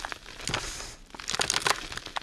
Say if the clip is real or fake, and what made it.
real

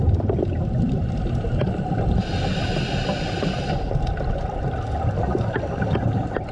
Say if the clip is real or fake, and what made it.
real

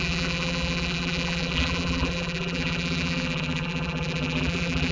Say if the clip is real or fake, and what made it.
fake, vocoder, BigVGAN v2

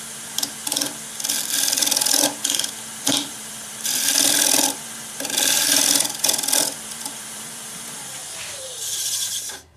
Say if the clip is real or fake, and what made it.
fake, vocoder, BigVGAN v2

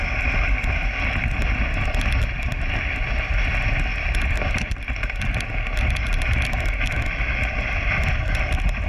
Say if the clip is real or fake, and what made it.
real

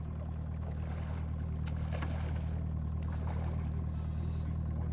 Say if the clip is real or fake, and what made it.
real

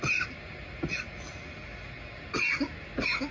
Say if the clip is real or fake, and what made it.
real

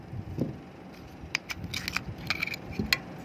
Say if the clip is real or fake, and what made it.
real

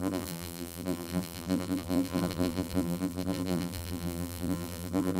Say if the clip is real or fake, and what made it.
fake, vocoder, BigVGAN v2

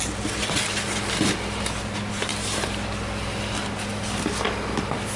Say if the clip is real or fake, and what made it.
real